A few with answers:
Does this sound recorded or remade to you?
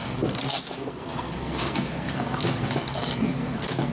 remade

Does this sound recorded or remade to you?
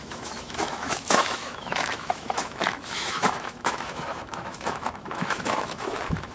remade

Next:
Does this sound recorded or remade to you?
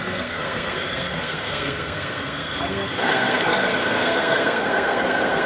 remade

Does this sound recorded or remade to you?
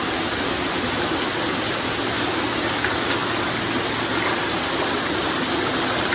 recorded